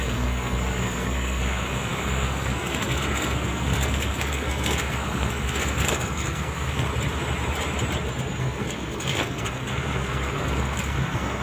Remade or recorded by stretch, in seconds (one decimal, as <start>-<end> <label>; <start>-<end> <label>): 0.0-6.9 remade; 6.9-8.4 recorded; 8.4-11.4 remade